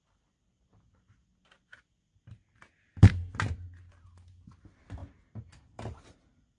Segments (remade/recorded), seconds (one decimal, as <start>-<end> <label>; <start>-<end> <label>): 0.0-3.2 remade; 3.2-4.3 recorded; 4.3-5.0 remade; 5.0-5.6 recorded; 5.6-6.6 remade